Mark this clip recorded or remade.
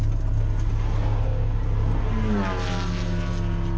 recorded